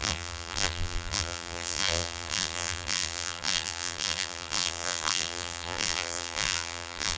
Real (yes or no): no